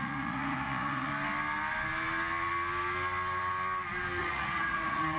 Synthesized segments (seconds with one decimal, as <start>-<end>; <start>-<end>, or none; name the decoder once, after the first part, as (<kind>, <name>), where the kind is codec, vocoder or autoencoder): 0.0-1.1 (vocoder, Vocos); 4.2-5.2

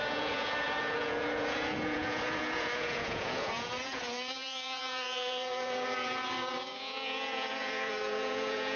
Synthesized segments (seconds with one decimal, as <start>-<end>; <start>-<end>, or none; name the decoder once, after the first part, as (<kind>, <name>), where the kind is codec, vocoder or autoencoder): 0.0-8.8 (vocoder, Vocos)

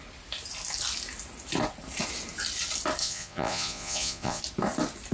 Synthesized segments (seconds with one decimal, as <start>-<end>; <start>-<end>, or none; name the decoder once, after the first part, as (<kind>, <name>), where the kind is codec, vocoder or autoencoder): 3.0-4.4 (vocoder, Vocos)

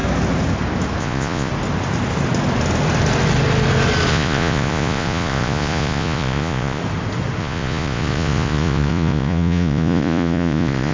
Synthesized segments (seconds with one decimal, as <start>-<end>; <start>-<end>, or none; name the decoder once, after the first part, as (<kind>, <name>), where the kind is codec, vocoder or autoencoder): 1.0-1.5 (vocoder, Vocos); 4.1-6.8; 7.4-10.9

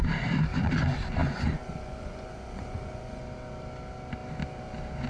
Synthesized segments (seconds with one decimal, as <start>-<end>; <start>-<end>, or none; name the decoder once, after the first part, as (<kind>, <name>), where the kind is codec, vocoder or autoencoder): 1.2-3.2 (vocoder, Vocos)

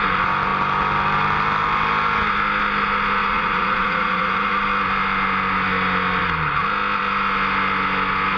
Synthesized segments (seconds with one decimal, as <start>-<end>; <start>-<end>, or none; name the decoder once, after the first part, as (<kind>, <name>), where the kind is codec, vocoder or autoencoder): 3.2-4.5 (vocoder, Vocos)